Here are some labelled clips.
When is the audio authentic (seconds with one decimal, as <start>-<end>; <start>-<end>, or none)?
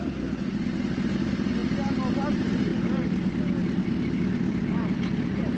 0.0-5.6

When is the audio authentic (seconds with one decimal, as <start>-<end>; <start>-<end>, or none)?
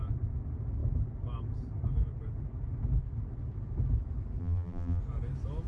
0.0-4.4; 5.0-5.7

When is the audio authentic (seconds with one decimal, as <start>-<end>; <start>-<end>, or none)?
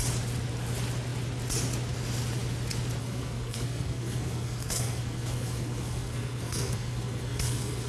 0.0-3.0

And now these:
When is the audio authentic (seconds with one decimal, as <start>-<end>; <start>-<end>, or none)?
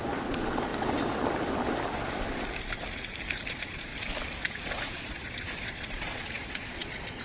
0.7-3.5; 3.9-4.4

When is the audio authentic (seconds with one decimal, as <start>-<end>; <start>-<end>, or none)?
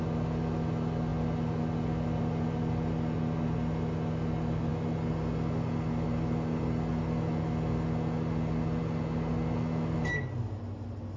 0.0-11.2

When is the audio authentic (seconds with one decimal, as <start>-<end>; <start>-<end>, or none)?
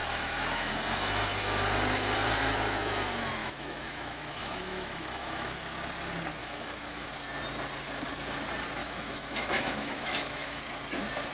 0.7-3.4; 5.5-6.4; 7.1-8.8; 10.6-11.3